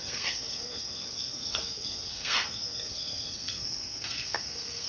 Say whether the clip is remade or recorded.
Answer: remade